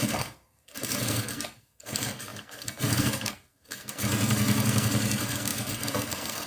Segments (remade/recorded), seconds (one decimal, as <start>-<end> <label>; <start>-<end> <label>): 0.0-6.5 remade